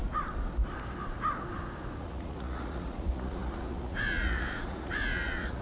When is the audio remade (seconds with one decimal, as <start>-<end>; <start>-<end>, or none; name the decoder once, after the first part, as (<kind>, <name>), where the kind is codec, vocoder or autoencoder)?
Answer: 2.0-5.6 (vocoder, Vocos)